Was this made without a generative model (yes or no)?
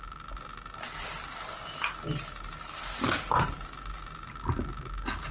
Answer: yes